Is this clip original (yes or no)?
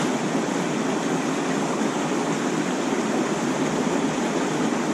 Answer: yes